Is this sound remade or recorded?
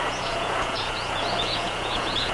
remade